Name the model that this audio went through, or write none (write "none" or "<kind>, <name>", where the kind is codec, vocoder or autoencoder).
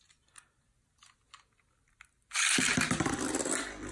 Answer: none